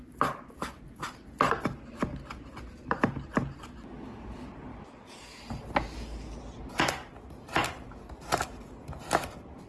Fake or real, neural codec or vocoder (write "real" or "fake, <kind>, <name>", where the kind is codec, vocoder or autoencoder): real